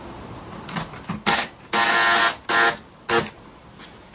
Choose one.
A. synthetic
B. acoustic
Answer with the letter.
B